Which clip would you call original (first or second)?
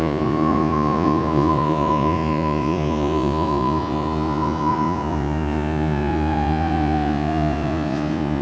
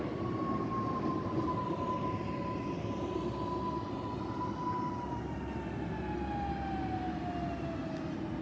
second